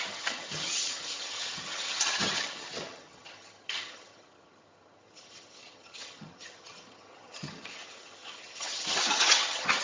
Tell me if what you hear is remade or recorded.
remade